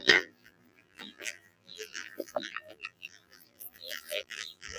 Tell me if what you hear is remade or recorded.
remade